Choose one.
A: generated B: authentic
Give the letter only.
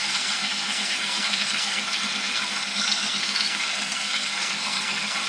A